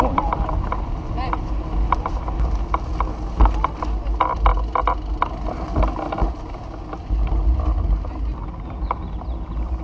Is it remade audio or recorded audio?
recorded